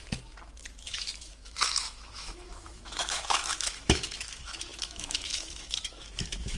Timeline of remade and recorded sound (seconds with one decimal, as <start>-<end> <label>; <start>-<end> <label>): 0.0-6.6 remade